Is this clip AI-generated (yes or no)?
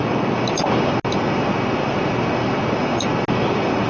no